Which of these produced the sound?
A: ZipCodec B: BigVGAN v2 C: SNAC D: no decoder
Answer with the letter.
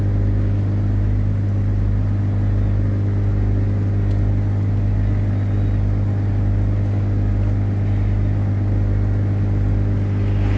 D